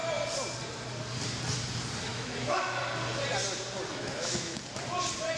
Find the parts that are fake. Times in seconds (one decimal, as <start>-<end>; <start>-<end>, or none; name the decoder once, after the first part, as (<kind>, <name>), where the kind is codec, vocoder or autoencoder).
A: 2.1-2.8 (autoencoder, DAC-VAE); 3.9-4.6